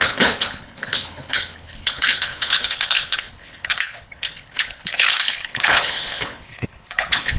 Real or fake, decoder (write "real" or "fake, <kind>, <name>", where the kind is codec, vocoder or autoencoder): fake, codec, HILCodec